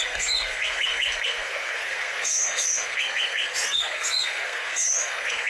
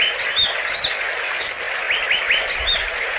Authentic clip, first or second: second